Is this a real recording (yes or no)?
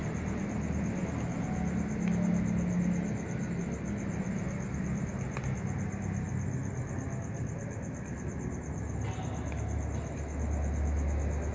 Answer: yes